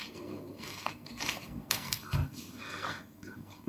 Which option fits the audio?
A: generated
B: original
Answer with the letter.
A